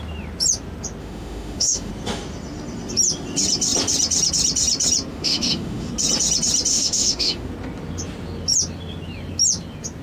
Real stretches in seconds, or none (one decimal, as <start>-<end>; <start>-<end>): 0.0-1.0; 1.9-5.1; 5.9-6.7; 7.5-10.0